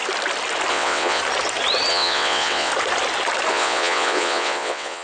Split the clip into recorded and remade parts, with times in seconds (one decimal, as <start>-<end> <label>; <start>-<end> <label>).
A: 0.0-0.7 recorded; 0.7-1.2 remade; 1.2-1.9 recorded; 1.9-2.7 remade; 2.7-3.5 recorded; 3.5-5.0 remade